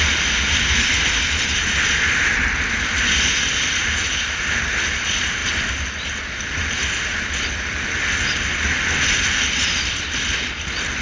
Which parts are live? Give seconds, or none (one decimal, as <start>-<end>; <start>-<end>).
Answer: 0.0-11.0